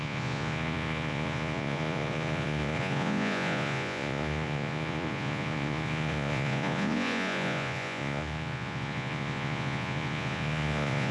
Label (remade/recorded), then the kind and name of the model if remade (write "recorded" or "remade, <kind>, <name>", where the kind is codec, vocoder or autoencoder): remade, vocoder, Vocos